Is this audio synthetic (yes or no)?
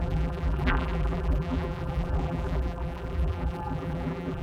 yes